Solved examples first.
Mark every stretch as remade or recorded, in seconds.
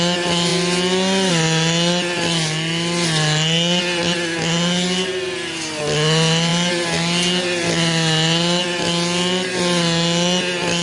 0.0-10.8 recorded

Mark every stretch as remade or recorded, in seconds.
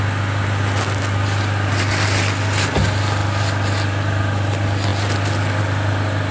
0.0-6.3 recorded